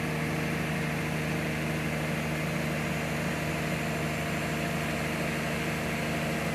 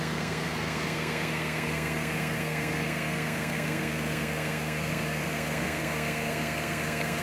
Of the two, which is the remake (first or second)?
second